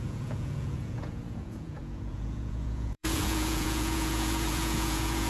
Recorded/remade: remade